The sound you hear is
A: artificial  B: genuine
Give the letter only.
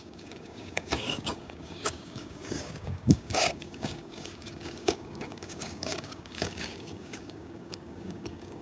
A